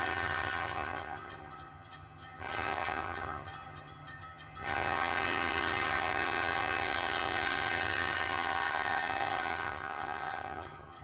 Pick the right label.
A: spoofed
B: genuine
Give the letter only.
A